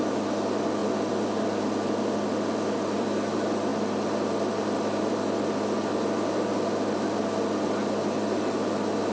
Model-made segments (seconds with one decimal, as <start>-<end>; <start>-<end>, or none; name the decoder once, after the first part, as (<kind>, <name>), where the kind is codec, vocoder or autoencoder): none